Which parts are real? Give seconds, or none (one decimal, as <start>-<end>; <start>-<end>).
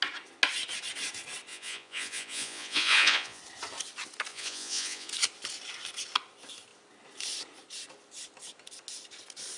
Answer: 0.0-1.5; 3.4-4.3; 5.1-9.6